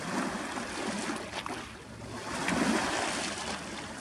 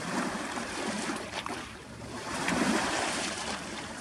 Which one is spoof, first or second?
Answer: second